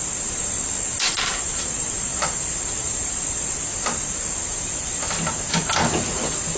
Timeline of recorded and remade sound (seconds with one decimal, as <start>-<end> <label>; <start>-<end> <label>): 0.0-6.6 recorded